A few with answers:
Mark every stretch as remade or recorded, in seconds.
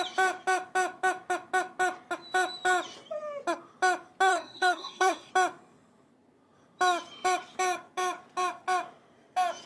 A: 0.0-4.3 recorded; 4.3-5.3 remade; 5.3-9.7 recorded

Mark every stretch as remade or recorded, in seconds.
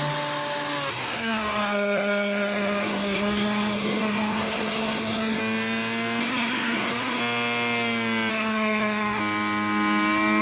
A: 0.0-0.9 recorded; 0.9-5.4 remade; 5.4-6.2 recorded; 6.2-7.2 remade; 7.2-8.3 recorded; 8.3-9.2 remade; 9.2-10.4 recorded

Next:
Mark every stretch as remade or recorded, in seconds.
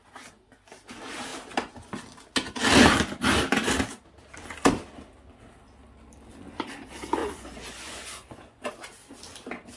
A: 0.0-7.2 recorded; 7.2-8.7 remade; 8.7-9.8 recorded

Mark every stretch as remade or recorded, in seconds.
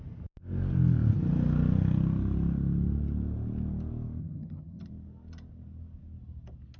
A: 0.0-4.2 recorded; 4.2-4.9 remade; 4.9-6.8 recorded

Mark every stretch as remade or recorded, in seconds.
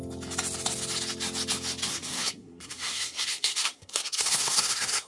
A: 0.0-1.9 recorded; 1.9-5.1 remade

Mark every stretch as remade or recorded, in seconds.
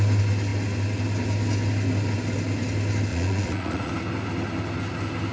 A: 0.0-3.1 recorded; 3.1-3.9 remade; 3.9-5.3 recorded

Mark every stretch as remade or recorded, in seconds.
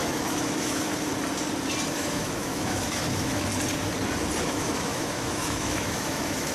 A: 0.0-0.9 remade; 0.9-1.9 recorded; 1.9-3.5 remade; 3.5-4.4 recorded; 4.4-6.5 remade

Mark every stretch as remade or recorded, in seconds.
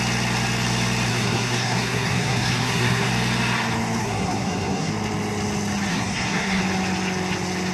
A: 0.0-1.1 recorded; 1.1-3.1 remade; 3.1-4.0 recorded; 4.0-4.9 remade; 4.9-5.9 recorded; 5.9-6.6 remade; 6.6-7.7 recorded